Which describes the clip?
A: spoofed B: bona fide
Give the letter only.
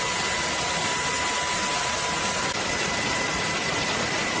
B